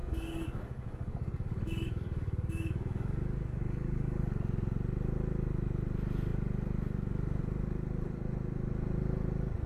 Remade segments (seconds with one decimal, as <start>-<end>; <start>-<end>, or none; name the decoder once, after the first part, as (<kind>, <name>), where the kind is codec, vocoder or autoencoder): 0.0-4.2 (codec, DAC)